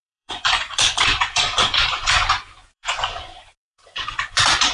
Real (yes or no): no